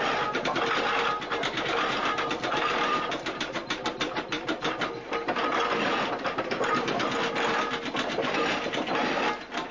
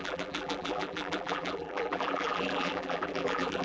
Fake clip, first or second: second